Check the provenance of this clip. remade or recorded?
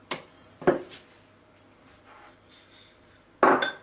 recorded